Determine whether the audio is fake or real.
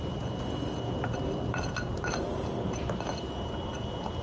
real